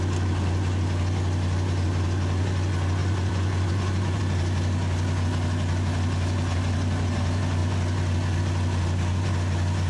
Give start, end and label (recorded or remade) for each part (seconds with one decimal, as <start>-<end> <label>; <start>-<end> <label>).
0.0-3.0 recorded; 3.0-4.2 remade; 4.2-9.9 recorded